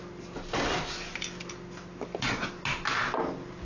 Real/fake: real